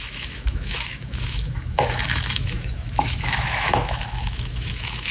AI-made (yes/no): yes